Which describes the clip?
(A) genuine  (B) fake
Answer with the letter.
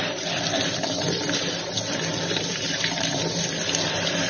A